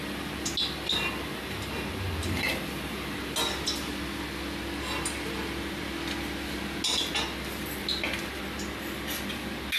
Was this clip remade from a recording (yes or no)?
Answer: no